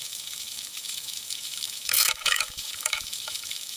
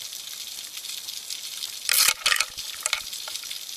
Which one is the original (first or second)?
second